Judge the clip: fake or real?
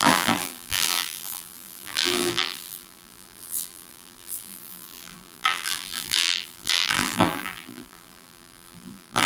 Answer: fake